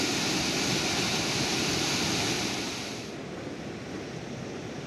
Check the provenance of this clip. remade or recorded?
recorded